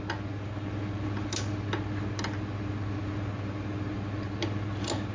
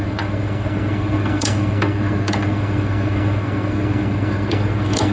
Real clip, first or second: first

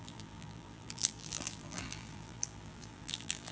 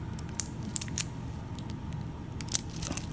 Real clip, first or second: second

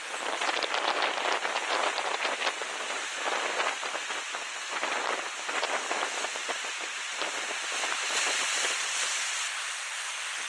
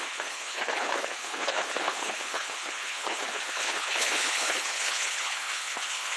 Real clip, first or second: first